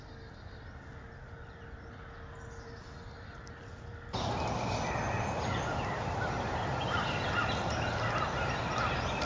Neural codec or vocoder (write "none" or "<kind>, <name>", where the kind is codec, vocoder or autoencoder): none